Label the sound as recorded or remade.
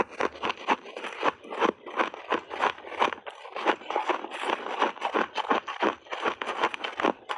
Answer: recorded